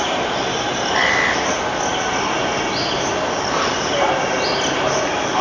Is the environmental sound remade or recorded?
recorded